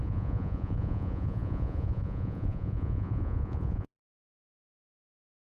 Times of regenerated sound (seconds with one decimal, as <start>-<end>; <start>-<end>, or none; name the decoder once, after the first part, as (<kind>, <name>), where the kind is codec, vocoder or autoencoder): 0.0-5.4 (vocoder, Vocos)